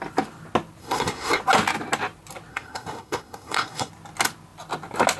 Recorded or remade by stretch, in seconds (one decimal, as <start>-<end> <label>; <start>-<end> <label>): 0.0-0.8 recorded; 0.8-1.4 remade; 1.4-2.5 recorded; 2.5-3.9 remade; 3.9-5.2 recorded